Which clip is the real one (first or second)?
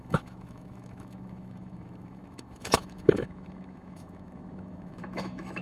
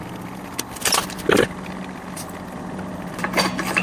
second